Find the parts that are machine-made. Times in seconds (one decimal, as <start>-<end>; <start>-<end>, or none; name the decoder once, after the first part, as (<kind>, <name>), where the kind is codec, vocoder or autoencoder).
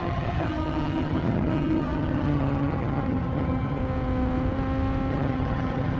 0.0-3.8 (vocoder, HiFi-GAN); 5.1-6.0